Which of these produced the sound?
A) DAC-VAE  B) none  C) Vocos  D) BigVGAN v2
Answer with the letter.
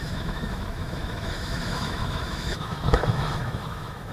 A